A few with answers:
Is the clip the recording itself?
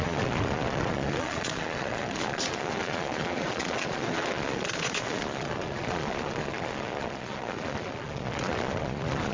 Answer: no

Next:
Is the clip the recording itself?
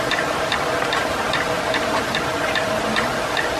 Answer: yes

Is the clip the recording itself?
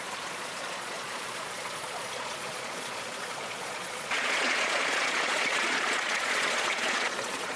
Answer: no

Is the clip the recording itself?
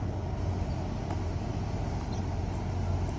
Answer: yes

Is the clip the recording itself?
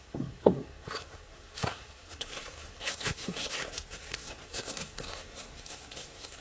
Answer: no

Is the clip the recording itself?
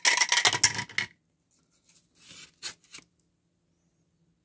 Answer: yes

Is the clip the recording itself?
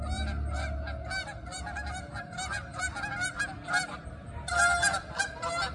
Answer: yes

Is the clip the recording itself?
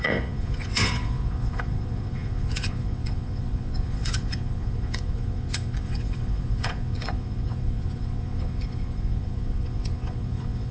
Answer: no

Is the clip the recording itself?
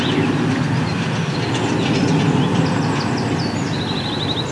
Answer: yes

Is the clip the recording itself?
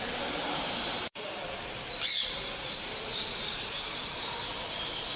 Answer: no